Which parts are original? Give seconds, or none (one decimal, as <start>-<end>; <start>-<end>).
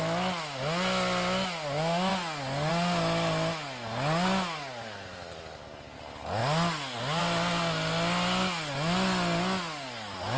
0.0-10.4